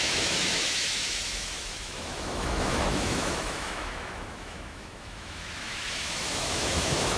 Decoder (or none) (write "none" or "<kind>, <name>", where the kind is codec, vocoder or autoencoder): autoencoder, DAC-VAE